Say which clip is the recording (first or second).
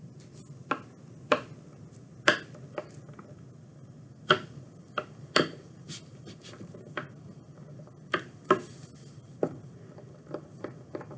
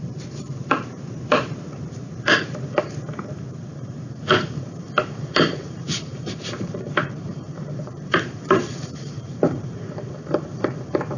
first